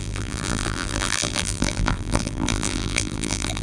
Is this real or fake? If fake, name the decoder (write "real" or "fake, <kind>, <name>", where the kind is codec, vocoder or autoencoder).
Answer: fake, vocoder, BigVGAN v2